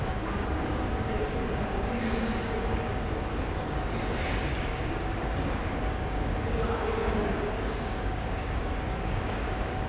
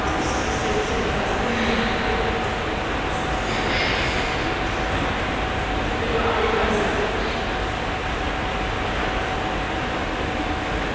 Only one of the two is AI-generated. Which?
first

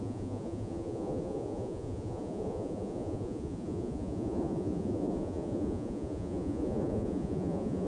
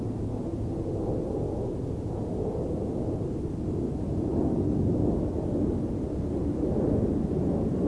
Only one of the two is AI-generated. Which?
first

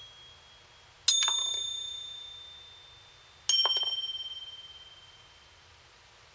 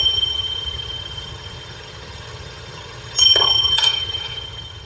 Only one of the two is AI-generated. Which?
second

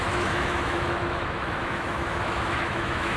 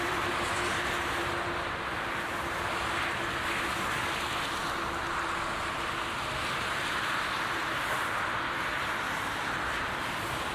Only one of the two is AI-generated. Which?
first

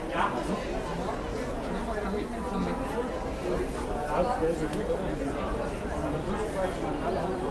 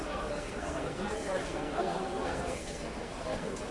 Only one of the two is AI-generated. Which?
second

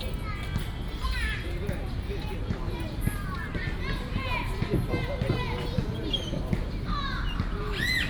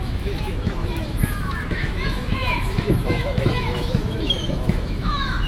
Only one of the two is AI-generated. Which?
second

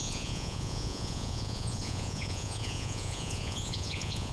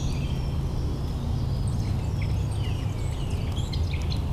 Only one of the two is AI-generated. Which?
first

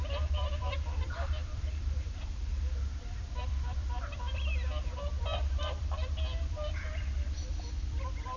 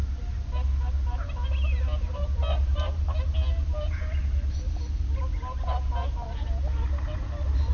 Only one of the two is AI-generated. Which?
first